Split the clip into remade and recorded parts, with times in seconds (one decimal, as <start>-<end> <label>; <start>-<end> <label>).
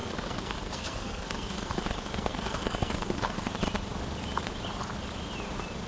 0.0-3.5 remade; 3.5-5.9 recorded